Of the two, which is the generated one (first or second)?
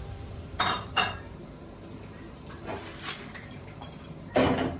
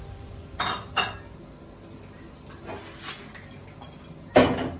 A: first